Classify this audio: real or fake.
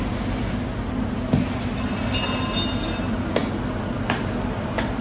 real